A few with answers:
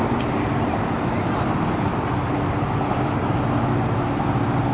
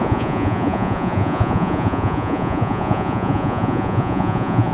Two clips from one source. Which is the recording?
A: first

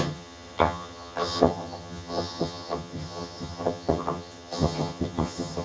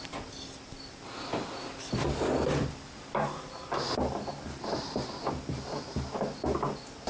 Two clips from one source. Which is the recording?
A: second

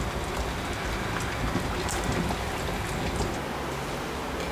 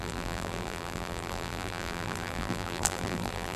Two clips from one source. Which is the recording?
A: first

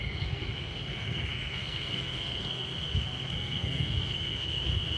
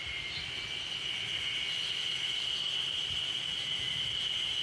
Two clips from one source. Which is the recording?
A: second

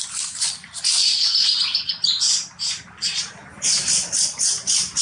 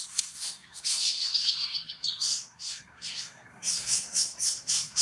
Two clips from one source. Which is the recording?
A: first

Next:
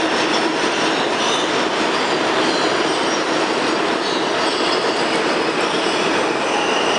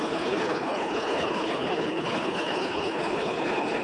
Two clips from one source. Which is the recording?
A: first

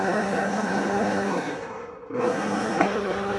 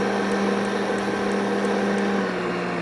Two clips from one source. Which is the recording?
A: second